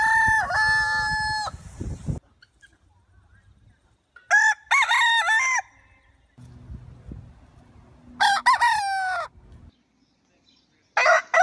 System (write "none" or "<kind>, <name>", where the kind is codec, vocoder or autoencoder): none